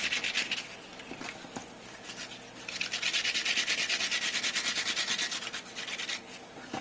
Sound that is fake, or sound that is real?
real